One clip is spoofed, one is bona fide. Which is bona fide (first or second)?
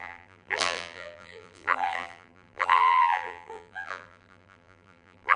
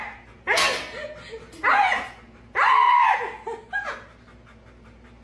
second